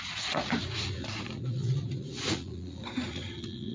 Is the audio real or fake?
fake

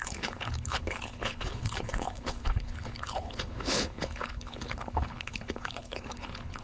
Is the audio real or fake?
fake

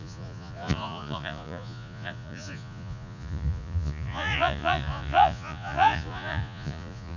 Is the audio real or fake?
fake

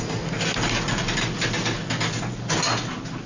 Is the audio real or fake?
real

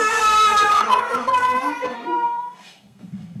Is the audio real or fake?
fake